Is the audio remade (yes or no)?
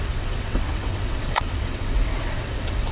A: yes